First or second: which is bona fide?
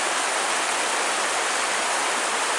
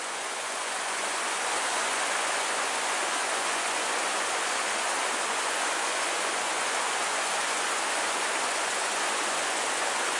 first